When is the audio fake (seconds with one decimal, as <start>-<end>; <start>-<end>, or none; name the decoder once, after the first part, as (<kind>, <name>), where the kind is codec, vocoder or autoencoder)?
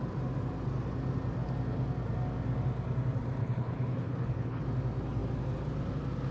3.4-4.6 (codec, HILCodec)